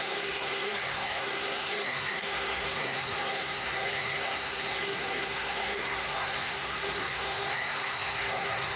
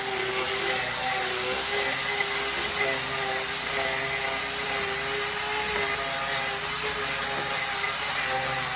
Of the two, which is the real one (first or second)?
second